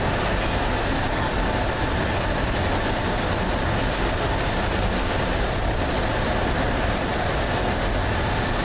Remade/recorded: recorded